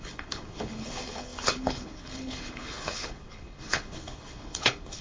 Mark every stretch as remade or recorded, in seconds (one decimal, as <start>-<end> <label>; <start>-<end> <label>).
0.0-5.0 remade